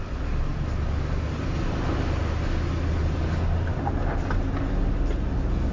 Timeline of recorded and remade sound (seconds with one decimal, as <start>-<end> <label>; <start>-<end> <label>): 0.0-5.7 recorded